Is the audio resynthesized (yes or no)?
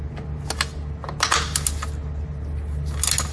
no